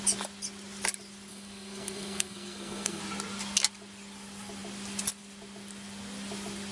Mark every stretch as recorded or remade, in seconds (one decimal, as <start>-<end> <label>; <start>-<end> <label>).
0.0-1.3 recorded; 1.3-3.0 remade; 3.0-6.7 recorded